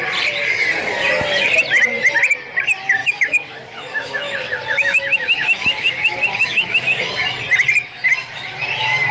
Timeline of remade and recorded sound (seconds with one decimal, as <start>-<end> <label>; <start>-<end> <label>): 0.0-3.0 recorded; 3.0-7.0 remade; 7.0-9.1 recorded